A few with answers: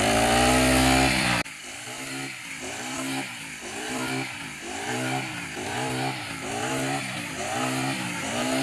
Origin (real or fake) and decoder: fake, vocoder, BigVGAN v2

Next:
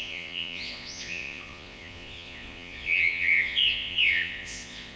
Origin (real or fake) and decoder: fake, vocoder, Vocos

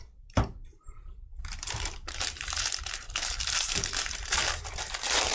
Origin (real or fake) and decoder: fake, vocoder, BigVGAN v2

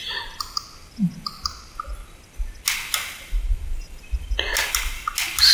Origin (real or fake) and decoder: real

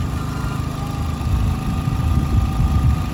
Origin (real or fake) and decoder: real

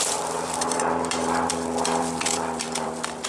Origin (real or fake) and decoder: fake, vocoder, BigVGAN v2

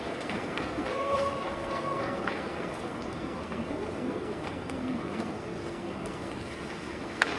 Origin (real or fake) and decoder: fake, codec, SNAC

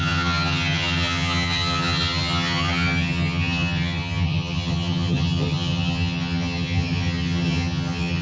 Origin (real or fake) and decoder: fake, vocoder, HiFi-GAN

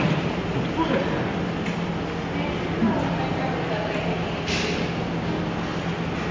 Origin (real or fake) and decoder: real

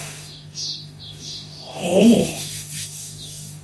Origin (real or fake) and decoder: fake, codec, DAC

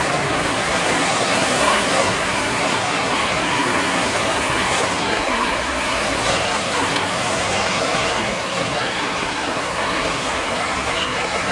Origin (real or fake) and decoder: fake, codec, SNAC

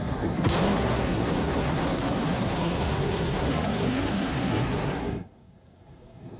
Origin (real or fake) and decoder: fake, codec, SNAC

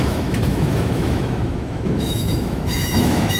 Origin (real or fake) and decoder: fake, autoencoder, DAC-VAE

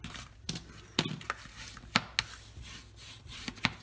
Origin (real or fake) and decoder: real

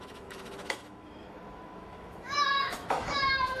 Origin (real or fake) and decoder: fake, autoencoder, DAC-VAE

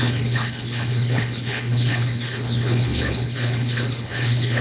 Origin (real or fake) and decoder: fake, codec, HILCodec